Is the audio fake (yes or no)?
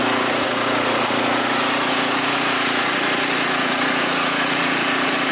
yes